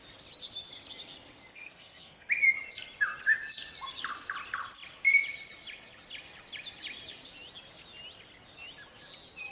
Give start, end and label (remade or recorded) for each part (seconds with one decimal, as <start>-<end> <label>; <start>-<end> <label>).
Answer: 0.0-1.5 recorded; 1.5-2.3 remade; 2.3-9.5 recorded